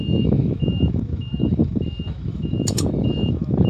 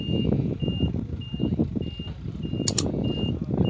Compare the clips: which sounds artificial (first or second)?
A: first